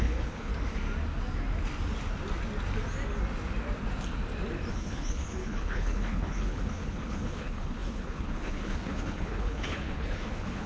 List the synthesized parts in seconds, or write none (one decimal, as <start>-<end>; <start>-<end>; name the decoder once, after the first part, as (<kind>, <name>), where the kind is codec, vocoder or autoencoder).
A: 0.0-0.5 (codec, HILCodec); 4.7-10.7